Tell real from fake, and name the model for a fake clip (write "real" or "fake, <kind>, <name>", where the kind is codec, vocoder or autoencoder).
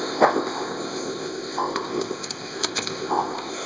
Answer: fake, codec, ZipCodec